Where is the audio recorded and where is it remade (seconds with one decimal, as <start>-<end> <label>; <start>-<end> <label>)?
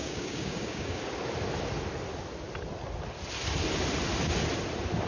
0.0-1.0 remade; 1.0-5.1 recorded